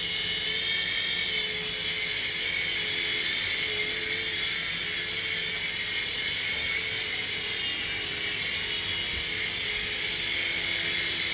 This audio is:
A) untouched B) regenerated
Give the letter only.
A